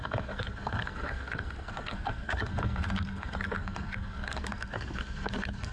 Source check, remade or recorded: remade